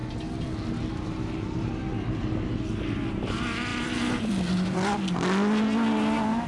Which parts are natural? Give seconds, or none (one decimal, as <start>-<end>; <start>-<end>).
0.0-3.7; 4.3-6.5